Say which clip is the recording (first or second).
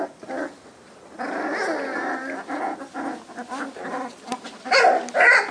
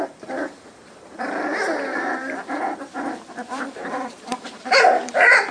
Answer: first